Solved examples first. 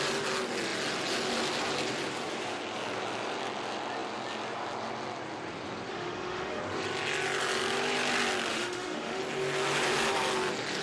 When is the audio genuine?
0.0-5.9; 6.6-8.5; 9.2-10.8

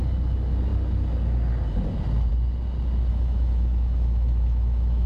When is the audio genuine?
0.0-3.1

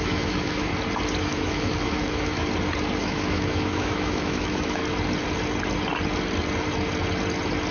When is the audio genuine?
0.7-1.2; 2.4-3.0; 4.8-7.7